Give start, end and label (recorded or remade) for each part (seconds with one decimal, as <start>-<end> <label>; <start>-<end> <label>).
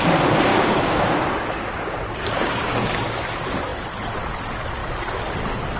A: 0.0-0.5 recorded; 0.5-3.2 remade; 3.2-5.8 recorded